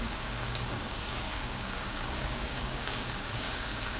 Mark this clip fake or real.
fake